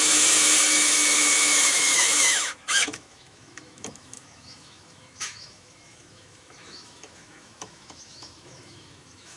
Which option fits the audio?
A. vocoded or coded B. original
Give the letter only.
A